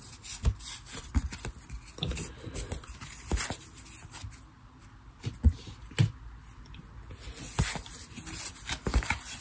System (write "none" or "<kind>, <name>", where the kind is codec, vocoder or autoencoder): none